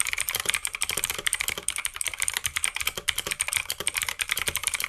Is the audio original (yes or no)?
no